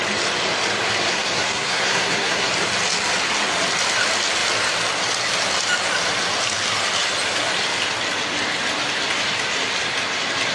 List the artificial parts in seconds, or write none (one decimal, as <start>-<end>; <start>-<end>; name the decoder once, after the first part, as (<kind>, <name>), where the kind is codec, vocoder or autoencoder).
1.1-2.5 (codec, SNAC)